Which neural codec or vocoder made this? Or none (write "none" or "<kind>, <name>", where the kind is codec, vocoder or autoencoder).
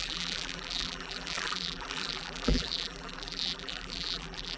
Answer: vocoder, BigVGAN v2